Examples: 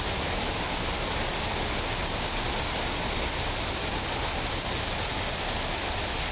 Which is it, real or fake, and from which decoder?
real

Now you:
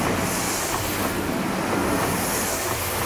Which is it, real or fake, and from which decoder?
real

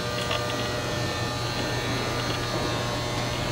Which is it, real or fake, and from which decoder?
real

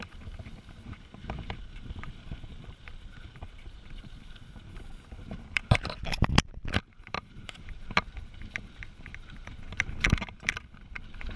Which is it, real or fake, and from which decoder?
fake, vocoder, BigVGAN v2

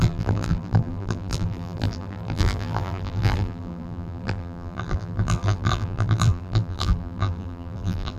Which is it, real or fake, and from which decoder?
fake, vocoder, BigVGAN v2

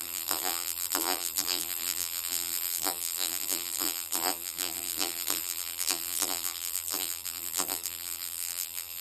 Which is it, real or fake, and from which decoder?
fake, vocoder, BigVGAN v2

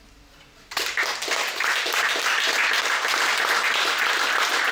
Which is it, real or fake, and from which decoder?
real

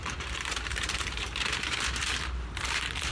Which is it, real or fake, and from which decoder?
fake, vocoder, BigVGAN v2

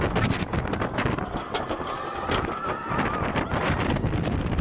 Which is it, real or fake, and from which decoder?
fake, vocoder, BigVGAN v2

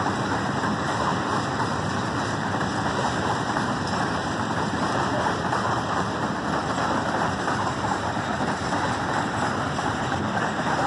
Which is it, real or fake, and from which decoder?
fake, vocoder, BigVGAN v2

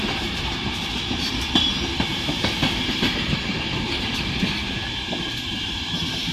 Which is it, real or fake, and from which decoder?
fake, vocoder, BigVGAN v2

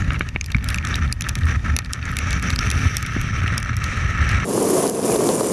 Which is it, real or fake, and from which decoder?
real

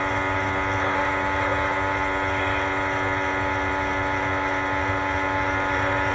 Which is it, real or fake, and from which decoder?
real